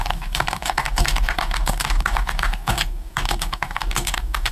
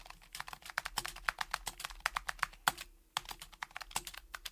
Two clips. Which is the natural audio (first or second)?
second